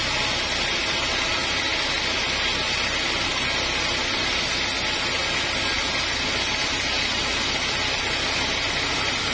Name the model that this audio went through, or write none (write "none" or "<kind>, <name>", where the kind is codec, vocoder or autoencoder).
none